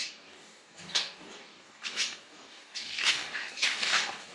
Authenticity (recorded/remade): remade